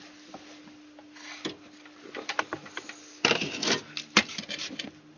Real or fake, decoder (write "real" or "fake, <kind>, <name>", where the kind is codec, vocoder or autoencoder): fake, vocoder, BigVGAN v2